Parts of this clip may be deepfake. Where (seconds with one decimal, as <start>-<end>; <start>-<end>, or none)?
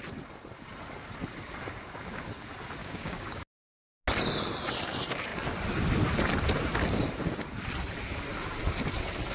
2.8-3.4